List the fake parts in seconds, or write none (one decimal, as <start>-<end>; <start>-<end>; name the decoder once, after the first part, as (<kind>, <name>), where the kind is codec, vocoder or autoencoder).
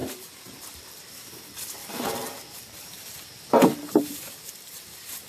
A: 0.0-0.8 (vocoder, BigVGAN v2); 1.8-5.3